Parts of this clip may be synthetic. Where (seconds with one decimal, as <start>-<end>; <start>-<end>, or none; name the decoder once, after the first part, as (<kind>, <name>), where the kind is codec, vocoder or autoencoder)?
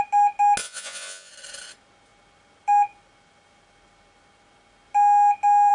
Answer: 0.6-1.3 (vocoder, Vocos)